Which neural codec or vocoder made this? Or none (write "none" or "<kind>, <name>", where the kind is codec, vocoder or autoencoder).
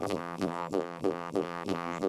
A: vocoder, BigVGAN v2